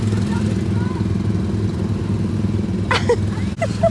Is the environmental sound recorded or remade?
recorded